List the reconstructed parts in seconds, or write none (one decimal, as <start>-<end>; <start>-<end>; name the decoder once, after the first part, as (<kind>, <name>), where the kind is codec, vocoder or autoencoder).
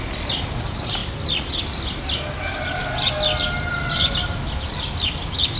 none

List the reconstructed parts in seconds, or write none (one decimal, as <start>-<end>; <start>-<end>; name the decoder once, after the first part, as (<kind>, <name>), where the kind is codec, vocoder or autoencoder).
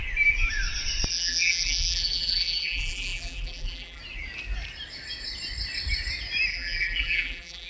1.1-4.0 (vocoder, BigVGAN v2); 6.5-7.7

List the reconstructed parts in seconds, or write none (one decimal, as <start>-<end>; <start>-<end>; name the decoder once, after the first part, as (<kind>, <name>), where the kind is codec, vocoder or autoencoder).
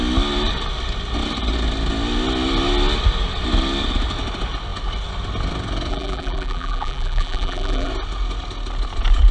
5.9-7.9 (vocoder, BigVGAN v2)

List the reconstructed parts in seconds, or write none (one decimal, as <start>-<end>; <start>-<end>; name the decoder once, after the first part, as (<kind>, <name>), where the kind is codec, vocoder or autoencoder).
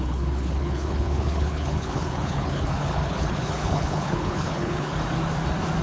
0.0-4.9 (codec, HILCodec)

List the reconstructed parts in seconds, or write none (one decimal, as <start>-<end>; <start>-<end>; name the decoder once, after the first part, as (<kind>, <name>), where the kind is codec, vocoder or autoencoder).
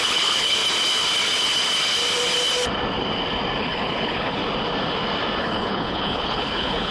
0.0-0.6 (codec, HILCodec); 3.6-4.4; 5.4-6.9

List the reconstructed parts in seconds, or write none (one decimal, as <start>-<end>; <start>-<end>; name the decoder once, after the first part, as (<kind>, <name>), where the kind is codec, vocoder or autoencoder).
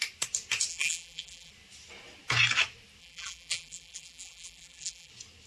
0.7-1.5 (vocoder, BigVGAN v2); 3.0-5.1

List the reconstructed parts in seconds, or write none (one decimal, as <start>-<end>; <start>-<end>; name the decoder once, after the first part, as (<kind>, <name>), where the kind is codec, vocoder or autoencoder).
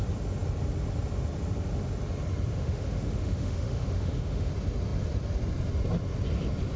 2.5-4.5 (autoencoder, DAC-VAE)